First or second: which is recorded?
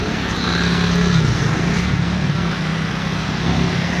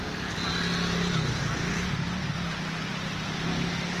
second